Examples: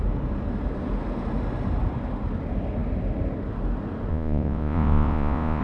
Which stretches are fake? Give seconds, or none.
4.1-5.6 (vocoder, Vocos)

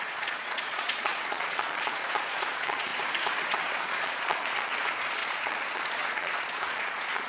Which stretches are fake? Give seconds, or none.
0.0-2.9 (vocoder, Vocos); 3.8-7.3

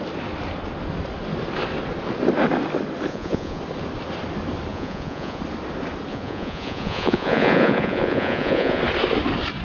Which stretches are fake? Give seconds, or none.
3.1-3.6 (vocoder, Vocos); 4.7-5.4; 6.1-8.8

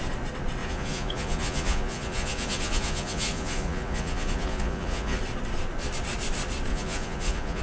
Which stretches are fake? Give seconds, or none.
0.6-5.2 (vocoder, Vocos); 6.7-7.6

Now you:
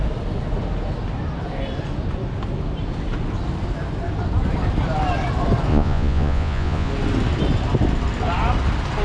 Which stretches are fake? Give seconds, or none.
5.7-6.9 (vocoder, Vocos)

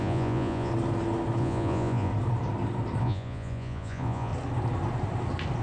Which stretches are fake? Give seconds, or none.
0.0-0.7 (vocoder, Vocos); 1.4-2.1; 3.0-4.3